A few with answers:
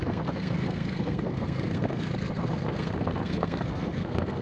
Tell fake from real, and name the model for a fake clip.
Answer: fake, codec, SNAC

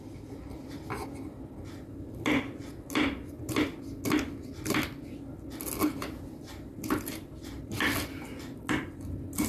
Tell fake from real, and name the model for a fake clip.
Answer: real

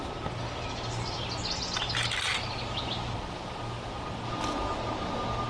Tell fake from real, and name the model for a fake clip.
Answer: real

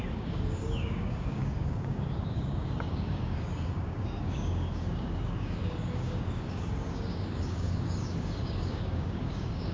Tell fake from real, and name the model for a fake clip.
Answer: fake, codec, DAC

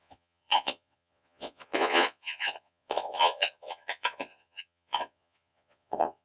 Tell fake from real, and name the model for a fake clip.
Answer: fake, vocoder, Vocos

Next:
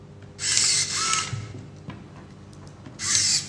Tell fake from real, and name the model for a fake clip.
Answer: real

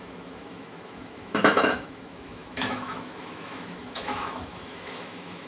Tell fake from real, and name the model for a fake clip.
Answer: fake, autoencoder, DAC-VAE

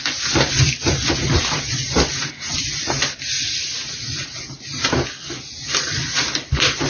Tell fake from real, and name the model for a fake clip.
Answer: real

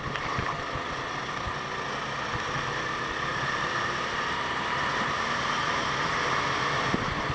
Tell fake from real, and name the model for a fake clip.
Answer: real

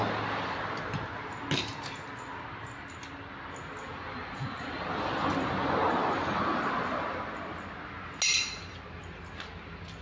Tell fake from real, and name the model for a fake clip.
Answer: real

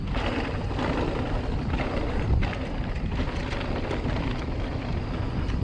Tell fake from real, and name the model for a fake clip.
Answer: real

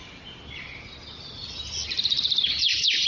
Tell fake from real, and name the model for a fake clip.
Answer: real